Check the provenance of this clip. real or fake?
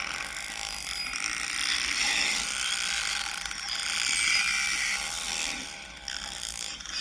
real